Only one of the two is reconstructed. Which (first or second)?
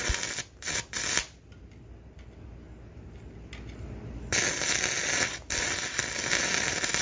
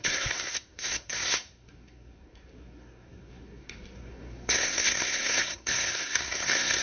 second